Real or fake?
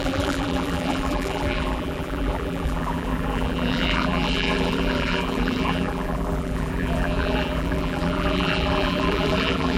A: fake